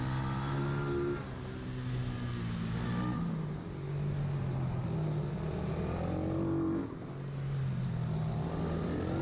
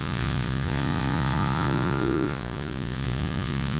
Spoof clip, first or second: second